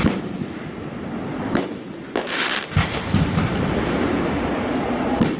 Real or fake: real